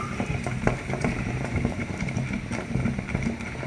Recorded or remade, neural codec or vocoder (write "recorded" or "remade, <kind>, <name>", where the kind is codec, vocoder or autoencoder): remade, vocoder, BigVGAN v2